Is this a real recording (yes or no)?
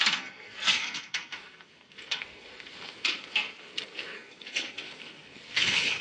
no